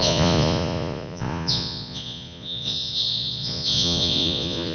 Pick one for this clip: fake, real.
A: fake